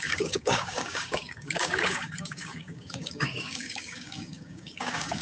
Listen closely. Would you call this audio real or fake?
fake